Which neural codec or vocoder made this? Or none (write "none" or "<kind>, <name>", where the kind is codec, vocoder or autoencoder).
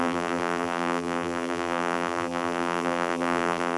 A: vocoder, BigVGAN v2